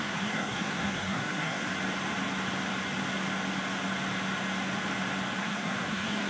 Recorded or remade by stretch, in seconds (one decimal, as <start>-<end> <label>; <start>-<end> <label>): 0.0-1.7 remade; 1.7-5.4 recorded; 5.4-6.3 remade